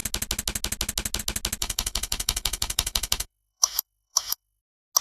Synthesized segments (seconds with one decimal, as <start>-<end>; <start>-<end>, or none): 1.6-4.6

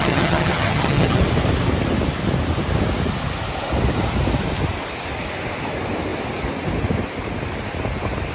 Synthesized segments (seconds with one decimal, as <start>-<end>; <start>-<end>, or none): 0.0-1.2

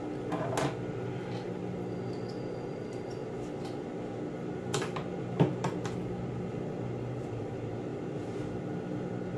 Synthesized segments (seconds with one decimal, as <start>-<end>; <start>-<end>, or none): none

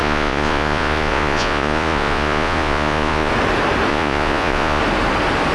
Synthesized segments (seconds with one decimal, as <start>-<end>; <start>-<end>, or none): 0.0-3.3; 3.9-4.8

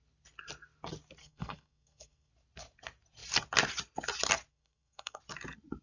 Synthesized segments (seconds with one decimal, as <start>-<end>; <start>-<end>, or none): 1.2-2.3; 4.5-5.2